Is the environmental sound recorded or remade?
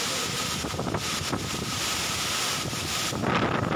recorded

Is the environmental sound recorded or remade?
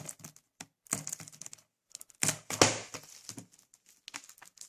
recorded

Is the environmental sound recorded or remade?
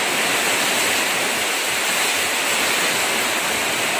recorded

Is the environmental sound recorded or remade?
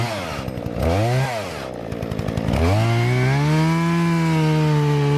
recorded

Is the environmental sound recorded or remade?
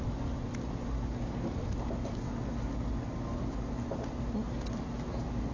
recorded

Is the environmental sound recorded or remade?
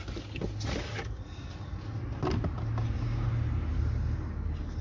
recorded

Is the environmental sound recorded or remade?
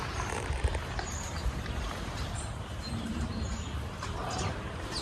remade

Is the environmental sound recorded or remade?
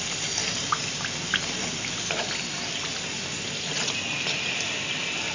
recorded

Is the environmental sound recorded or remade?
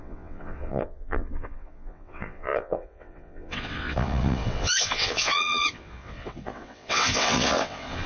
remade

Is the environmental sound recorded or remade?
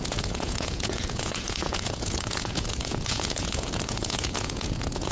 remade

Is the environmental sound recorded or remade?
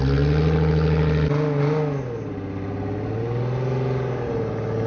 recorded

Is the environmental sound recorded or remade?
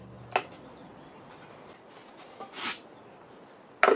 recorded